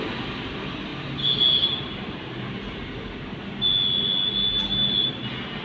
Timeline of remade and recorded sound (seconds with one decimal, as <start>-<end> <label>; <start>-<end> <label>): 0.0-5.6 recorded